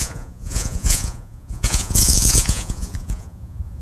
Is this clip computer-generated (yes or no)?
yes